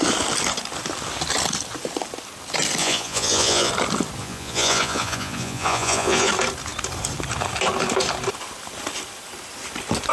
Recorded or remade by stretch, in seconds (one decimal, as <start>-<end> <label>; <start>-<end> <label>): 0.0-2.8 recorded; 2.8-3.7 remade; 3.7-4.2 recorded; 4.2-6.3 remade; 6.3-10.1 recorded